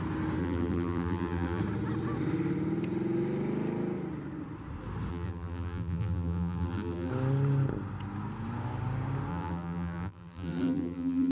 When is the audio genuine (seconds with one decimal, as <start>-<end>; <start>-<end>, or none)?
0.0-0.4; 1.6-5.1; 7.1-9.3

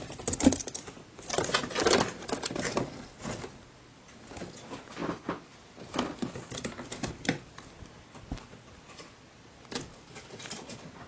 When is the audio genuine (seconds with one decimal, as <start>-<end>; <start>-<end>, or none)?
0.0-11.1

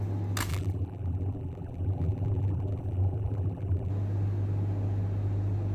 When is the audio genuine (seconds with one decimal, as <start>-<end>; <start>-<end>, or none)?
0.0-0.5; 3.9-5.7